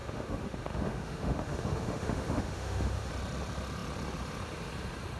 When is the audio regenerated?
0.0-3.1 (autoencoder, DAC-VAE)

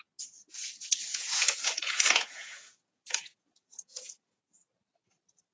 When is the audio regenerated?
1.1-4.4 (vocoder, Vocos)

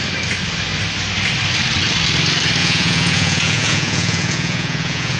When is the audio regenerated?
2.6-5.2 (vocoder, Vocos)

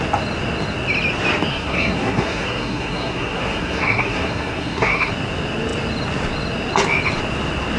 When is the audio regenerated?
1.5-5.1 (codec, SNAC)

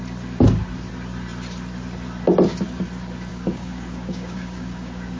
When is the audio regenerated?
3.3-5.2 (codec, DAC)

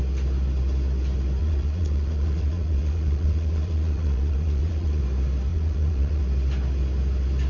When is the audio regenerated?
1.4-5.0 (vocoder, Vocos); 5.5-6.2